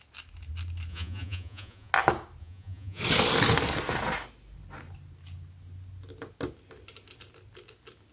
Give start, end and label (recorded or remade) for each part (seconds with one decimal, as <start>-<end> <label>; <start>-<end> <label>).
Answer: 0.0-0.9 recorded; 0.9-1.9 remade; 1.9-2.4 recorded; 2.4-3.0 remade; 3.0-8.1 recorded